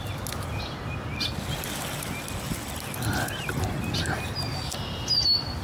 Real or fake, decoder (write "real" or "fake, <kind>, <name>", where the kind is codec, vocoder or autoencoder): real